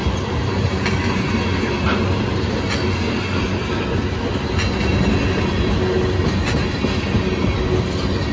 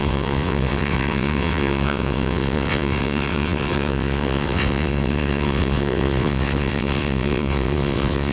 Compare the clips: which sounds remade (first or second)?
second